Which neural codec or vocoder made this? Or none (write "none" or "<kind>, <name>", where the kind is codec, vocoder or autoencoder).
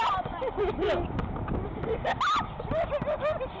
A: none